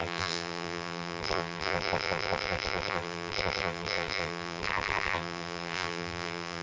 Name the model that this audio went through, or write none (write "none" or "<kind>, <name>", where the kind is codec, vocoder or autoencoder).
vocoder, BigVGAN v2